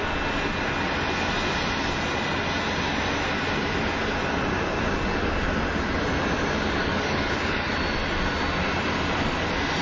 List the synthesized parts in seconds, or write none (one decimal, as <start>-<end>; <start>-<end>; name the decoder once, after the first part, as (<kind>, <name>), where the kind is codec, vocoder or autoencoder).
6.8-7.7 (codec, DAC)